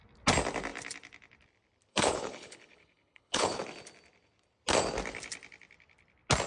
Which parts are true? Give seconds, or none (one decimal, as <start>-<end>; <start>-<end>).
0.0-1.9; 3.6-6.5